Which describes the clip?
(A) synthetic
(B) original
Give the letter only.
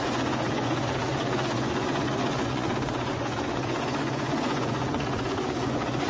A